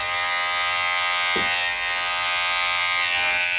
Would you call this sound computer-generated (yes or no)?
no